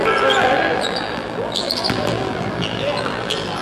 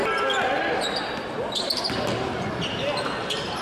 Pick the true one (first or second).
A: second